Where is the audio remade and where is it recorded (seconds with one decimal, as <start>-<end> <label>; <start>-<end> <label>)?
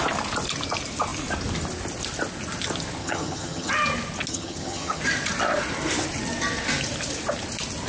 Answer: 0.0-3.0 recorded; 3.0-3.7 remade; 3.7-4.3 recorded; 4.3-5.0 remade; 5.0-7.9 recorded